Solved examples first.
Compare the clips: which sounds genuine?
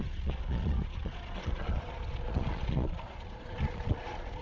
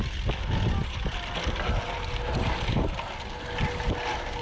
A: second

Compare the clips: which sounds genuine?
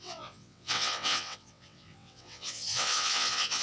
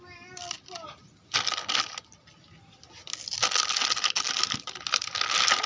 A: second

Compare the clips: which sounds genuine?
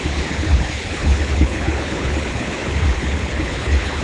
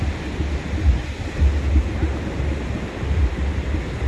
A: second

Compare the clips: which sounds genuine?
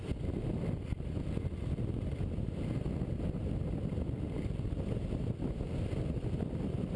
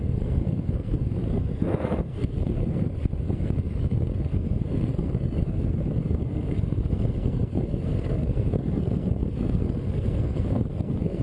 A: first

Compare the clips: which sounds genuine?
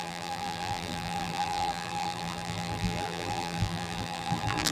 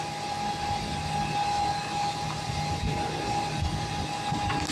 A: second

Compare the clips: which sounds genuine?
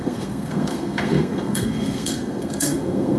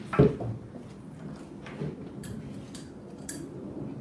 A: second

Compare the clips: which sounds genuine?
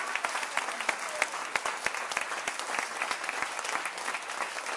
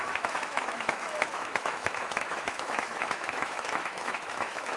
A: first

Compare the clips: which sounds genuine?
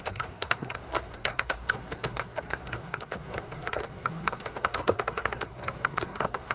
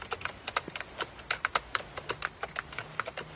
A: second